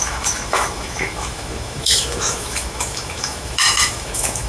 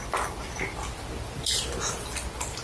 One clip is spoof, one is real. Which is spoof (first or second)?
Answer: first